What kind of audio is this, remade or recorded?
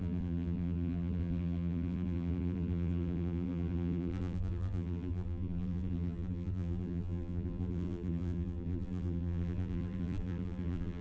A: remade